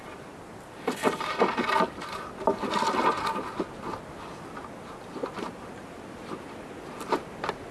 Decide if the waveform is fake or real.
real